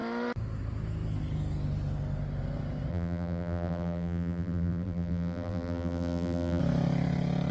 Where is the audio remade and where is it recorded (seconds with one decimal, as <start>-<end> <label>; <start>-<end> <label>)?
0.0-2.9 recorded; 2.9-6.6 remade; 6.6-7.5 recorded